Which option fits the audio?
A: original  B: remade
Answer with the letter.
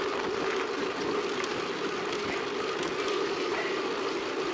A